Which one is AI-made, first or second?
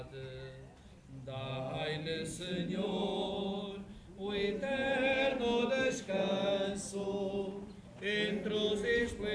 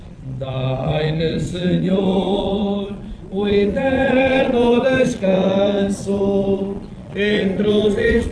second